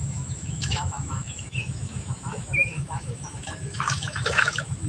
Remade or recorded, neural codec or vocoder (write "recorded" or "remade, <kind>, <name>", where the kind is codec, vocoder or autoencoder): remade, autoencoder, DAC-VAE